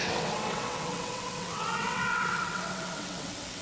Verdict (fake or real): fake